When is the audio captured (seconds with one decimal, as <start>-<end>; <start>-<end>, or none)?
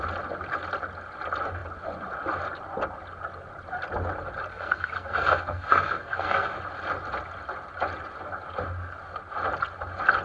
0.0-4.5; 6.6-10.2